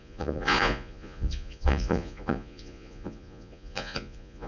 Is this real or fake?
fake